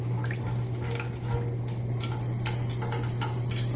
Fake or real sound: real